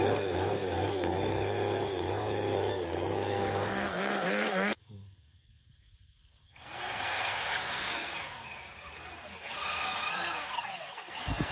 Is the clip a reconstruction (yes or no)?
yes